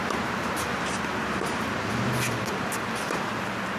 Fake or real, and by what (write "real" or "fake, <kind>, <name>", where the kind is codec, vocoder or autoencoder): real